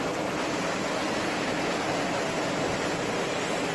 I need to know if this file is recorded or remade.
recorded